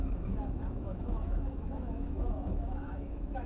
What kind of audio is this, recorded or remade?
remade